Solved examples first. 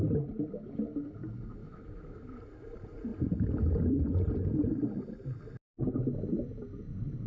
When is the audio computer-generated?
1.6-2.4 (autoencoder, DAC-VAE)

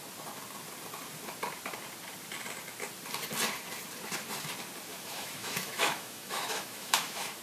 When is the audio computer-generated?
4.9-7.4 (autoencoder, DAC-VAE)

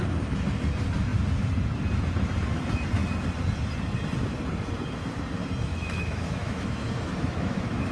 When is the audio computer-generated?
5.7-7.9 (autoencoder, DAC-VAE)

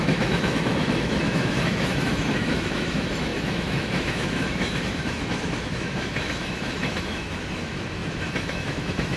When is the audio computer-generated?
0.0-9.2 (autoencoder, DAC-VAE)

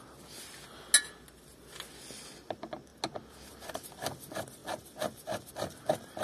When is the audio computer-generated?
none

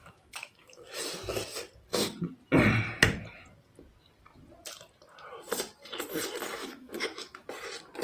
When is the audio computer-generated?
0.0-1.0 (autoencoder, DAC-VAE); 6.6-7.5

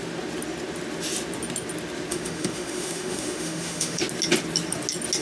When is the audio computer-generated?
2.1-4.0 (autoencoder, DAC-VAE)

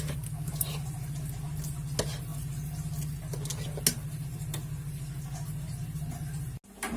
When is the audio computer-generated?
none